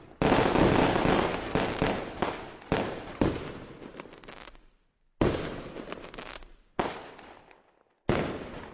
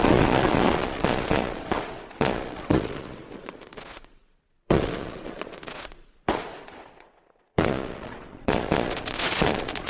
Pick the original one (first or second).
first